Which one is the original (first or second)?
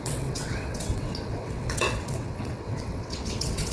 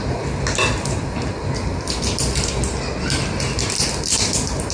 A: second